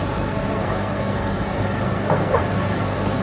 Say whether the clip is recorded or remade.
remade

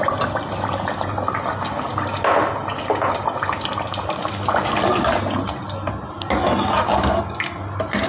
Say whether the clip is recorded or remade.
recorded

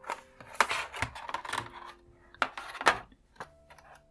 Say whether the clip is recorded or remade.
recorded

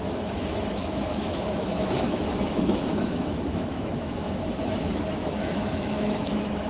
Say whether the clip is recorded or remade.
remade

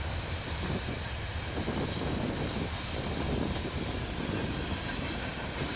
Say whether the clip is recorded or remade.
recorded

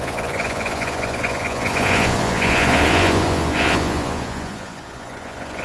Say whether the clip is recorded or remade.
remade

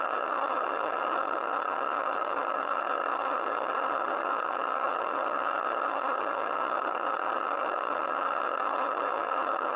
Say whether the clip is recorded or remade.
remade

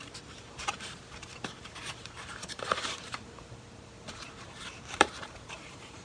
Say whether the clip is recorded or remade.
remade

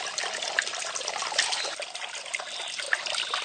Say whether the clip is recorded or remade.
recorded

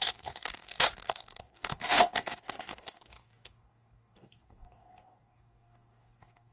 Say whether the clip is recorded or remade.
remade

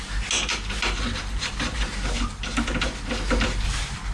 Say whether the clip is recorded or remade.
recorded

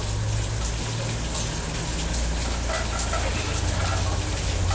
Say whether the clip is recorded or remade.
recorded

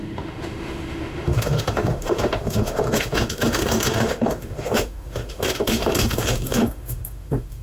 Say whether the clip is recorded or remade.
remade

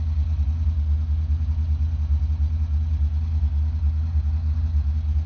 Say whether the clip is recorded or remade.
recorded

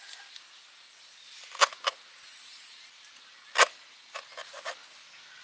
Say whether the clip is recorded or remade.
recorded